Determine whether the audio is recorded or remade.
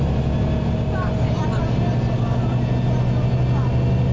recorded